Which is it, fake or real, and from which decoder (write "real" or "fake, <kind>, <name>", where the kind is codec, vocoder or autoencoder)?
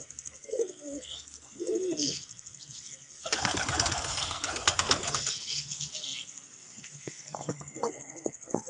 fake, codec, SNAC